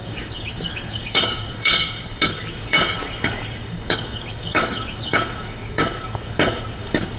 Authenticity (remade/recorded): remade